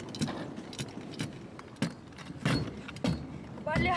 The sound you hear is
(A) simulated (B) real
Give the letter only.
B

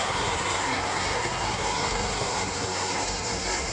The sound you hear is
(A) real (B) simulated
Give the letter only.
B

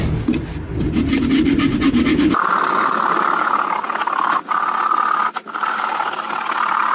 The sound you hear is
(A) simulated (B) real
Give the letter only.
B